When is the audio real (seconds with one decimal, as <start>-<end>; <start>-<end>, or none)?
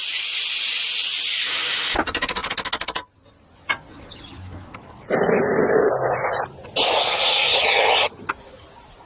0.0-7.5; 8.3-9.1